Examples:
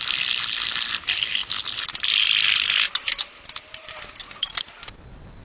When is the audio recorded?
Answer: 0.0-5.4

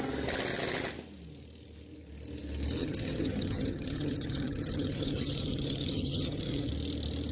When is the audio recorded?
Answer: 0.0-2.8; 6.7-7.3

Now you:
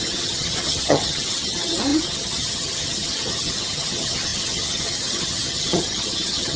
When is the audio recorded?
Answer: none

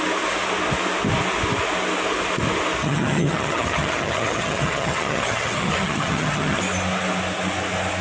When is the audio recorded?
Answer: 0.0-2.8; 6.6-8.0

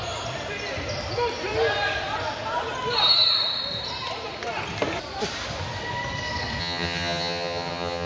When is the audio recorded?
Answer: 0.0-6.6

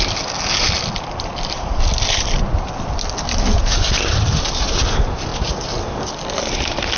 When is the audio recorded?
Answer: 0.0-7.0